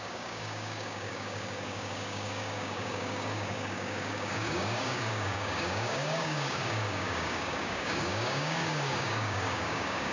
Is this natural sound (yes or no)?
no